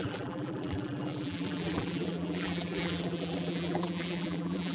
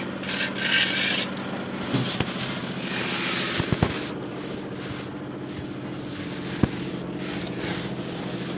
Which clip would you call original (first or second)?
second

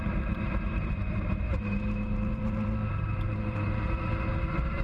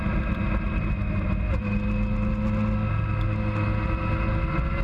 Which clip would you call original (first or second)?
second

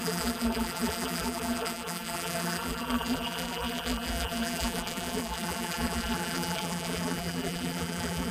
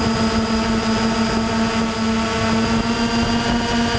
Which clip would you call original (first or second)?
second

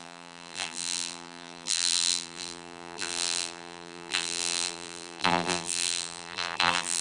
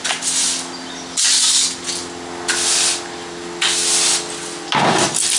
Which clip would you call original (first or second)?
second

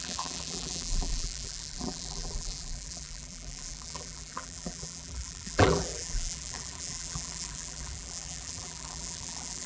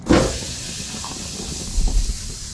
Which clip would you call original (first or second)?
second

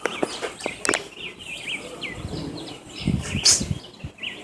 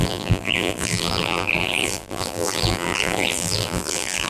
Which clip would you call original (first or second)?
first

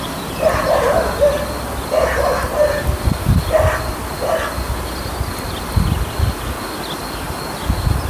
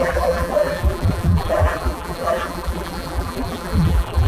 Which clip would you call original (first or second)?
first